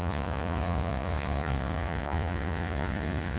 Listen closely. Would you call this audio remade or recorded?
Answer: remade